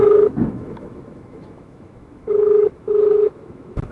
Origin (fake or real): fake